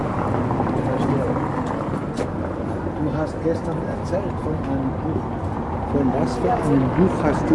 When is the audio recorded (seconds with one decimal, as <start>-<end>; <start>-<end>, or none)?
0.0-7.5